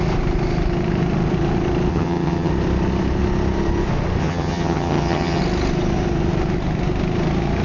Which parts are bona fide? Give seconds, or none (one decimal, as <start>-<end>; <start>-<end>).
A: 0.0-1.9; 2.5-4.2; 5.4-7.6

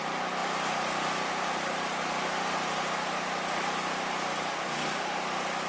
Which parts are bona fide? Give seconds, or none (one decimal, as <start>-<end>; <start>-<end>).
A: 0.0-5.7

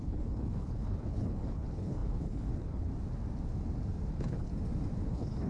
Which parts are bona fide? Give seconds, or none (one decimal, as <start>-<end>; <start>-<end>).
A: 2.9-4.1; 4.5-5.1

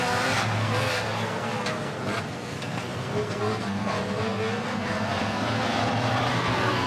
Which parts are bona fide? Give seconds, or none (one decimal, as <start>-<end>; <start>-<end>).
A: 5.8-6.3

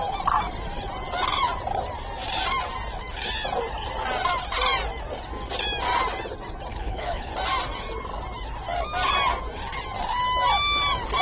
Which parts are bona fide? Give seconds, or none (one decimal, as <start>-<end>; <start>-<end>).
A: 0.0-6.7; 7.3-11.2

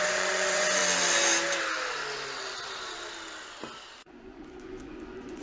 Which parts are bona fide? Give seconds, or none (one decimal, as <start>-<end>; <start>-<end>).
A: 0.8-4.0

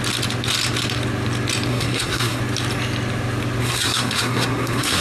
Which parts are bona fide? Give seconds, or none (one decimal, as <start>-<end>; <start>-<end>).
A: 0.0-1.7; 2.4-3.6